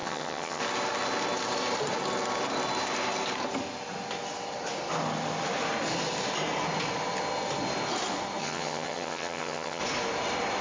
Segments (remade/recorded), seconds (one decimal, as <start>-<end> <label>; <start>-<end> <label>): 0.0-0.6 remade; 0.6-8.4 recorded; 8.4-9.8 remade; 9.8-10.6 recorded